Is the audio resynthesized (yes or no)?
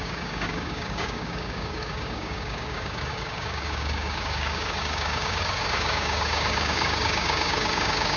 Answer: yes